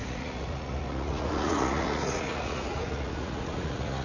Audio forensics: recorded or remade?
remade